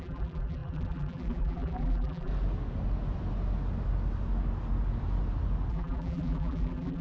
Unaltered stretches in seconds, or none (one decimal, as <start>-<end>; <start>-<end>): 2.3-5.7